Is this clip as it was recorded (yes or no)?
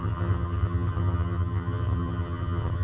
no